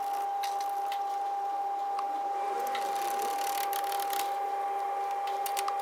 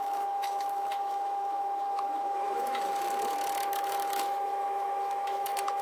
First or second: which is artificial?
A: second